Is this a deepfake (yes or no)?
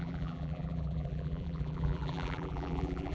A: yes